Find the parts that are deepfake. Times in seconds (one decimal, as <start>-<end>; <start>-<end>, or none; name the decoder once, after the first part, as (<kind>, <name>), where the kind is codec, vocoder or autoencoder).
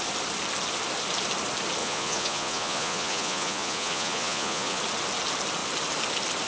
1.8-4.8 (vocoder, Vocos)